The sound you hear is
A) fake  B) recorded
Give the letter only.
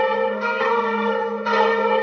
A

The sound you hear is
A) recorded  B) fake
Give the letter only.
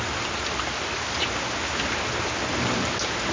A